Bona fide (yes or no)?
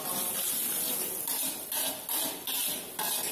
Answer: yes